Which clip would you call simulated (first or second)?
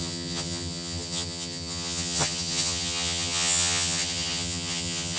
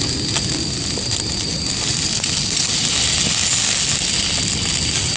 first